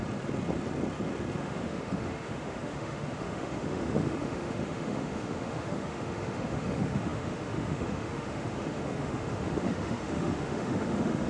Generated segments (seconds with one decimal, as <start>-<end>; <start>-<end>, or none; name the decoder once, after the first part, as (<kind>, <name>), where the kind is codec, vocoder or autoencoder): 1.4-11.3 (autoencoder, DAC-VAE)

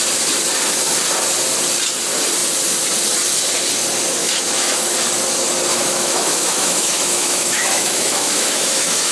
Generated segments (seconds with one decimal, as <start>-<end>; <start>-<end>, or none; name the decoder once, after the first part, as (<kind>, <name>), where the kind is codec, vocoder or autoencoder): 4.2-4.8 (autoencoder, DAC-VAE); 5.7-9.1

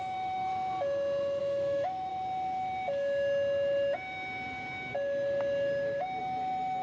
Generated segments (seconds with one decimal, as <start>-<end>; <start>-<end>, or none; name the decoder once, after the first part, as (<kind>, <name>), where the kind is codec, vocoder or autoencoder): 0.0-0.5 (autoencoder, DAC-VAE); 1.4-2.1; 6.2-6.8

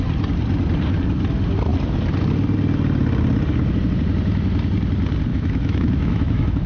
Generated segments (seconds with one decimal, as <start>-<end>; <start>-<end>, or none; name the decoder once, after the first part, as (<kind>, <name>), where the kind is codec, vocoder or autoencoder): 5.3-6.7 (autoencoder, DAC-VAE)

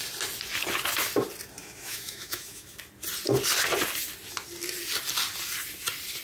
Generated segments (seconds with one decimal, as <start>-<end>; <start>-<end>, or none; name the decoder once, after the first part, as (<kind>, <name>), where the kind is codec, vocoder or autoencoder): 1.6-2.8 (autoencoder, DAC-VAE)